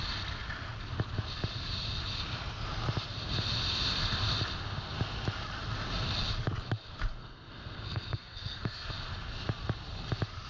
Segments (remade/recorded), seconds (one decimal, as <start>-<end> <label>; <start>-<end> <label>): 0.0-7.2 recorded; 7.2-8.9 remade; 8.9-10.5 recorded